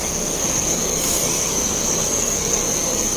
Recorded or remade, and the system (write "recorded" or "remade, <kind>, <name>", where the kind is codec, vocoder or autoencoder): remade, codec, SNAC